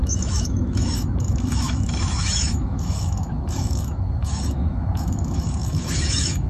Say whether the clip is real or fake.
fake